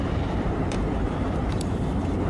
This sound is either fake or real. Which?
fake